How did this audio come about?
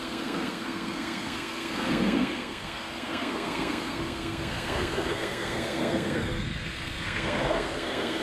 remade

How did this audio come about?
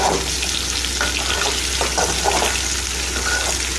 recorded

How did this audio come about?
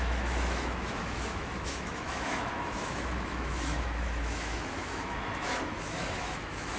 remade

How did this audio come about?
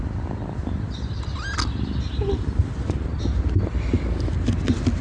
recorded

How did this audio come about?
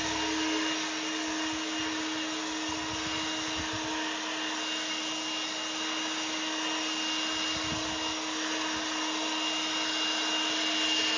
recorded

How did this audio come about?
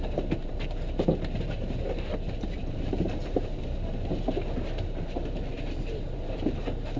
remade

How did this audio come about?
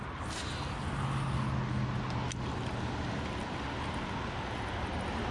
recorded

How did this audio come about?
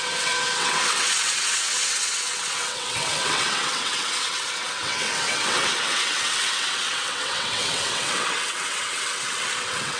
remade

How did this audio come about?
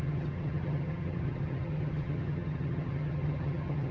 remade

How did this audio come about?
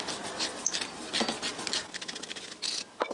recorded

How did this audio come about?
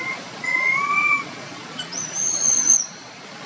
remade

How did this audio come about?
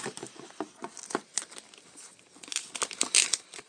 recorded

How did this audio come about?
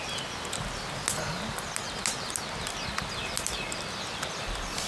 recorded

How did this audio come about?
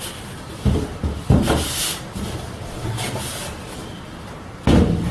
recorded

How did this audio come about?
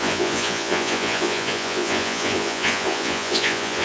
remade